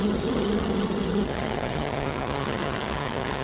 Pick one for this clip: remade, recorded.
remade